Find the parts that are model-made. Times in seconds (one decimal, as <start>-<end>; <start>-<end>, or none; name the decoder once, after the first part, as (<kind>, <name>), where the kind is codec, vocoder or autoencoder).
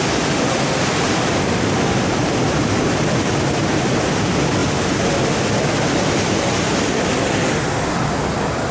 none